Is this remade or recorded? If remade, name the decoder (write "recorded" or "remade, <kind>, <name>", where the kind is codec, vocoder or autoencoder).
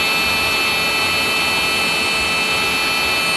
recorded